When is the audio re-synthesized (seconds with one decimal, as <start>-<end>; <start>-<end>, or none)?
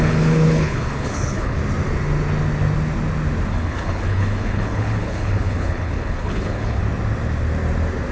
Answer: 0.0-1.6; 3.5-6.8